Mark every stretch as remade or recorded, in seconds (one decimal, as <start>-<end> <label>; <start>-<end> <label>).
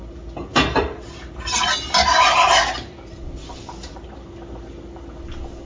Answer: 0.0-0.5 recorded; 0.5-3.9 remade; 3.9-5.7 recorded